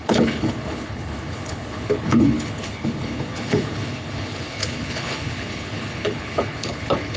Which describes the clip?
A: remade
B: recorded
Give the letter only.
A